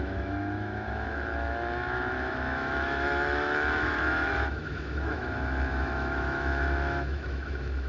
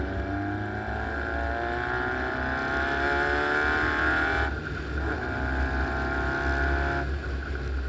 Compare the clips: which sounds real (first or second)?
second